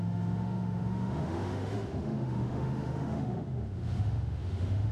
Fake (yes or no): yes